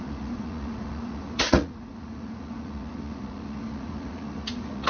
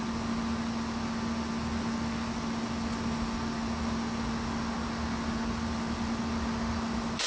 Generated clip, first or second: first